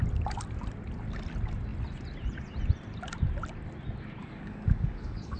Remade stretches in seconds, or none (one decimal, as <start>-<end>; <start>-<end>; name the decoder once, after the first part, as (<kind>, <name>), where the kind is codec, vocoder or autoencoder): 4.2-5.4 (codec, DAC)